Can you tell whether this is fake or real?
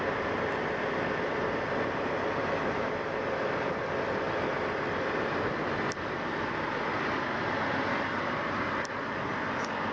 real